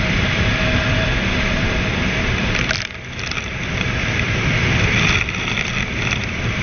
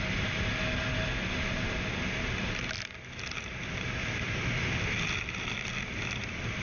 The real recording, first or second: second